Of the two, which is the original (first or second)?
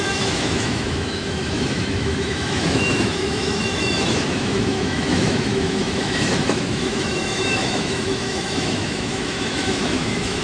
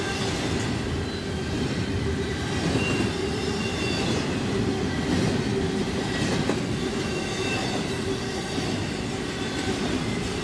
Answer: second